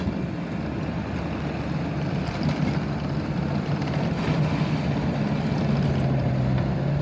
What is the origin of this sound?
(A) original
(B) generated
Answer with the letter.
A